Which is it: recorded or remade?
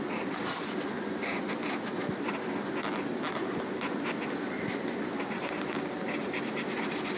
recorded